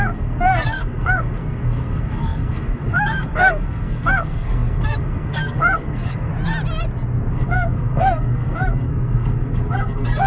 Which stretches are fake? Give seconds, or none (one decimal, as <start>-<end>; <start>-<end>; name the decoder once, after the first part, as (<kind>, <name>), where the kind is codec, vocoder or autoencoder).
0.0-6.3 (codec, SNAC); 7.3-10.3